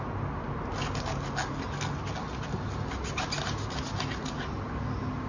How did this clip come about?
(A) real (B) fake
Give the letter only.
A